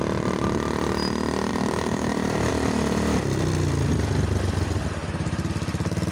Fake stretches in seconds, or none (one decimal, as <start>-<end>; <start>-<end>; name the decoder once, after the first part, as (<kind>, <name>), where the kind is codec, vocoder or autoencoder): 1.5-2.5 (vocoder, BigVGAN v2); 5.0-5.5